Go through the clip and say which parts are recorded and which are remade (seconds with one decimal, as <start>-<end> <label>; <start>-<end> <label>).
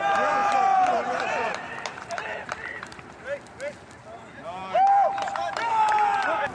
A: 0.0-0.4 recorded; 0.4-3.4 remade; 3.4-6.5 recorded